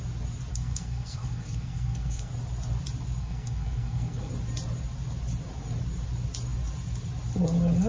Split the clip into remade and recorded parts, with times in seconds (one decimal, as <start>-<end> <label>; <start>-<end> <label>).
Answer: 0.0-0.5 recorded; 0.5-2.3 remade; 2.3-3.2 recorded; 3.2-4.3 remade; 4.3-7.9 recorded